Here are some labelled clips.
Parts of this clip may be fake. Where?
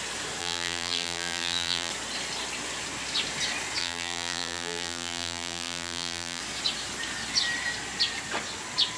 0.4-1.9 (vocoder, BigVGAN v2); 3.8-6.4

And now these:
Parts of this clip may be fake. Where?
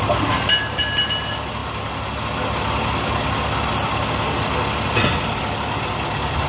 none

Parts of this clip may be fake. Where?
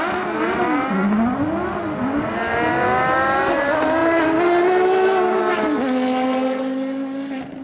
none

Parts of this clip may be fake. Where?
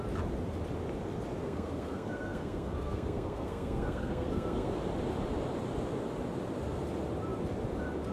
1.4-4.7 (codec, SNAC)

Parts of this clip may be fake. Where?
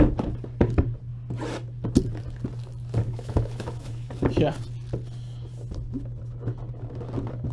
3.0-4.1 (autoencoder, DAC-VAE)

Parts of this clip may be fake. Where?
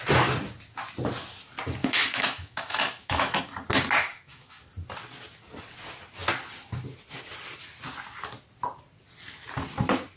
1.8-3.4 (autoencoder, DAC-VAE); 4.0-4.6